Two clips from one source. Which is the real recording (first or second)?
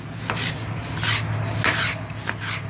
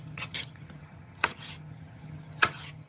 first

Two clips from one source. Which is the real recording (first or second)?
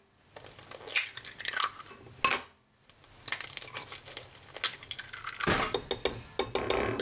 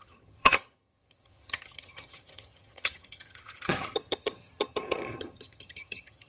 first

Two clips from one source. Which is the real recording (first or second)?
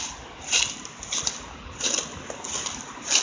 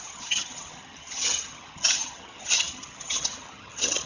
first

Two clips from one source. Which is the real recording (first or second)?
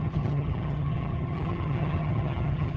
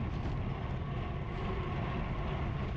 second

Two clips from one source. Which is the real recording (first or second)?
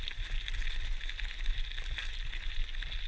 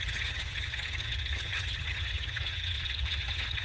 first